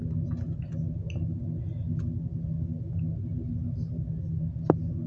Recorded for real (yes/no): yes